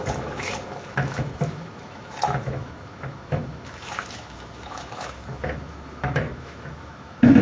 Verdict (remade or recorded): remade